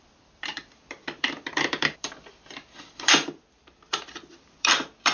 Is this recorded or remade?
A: remade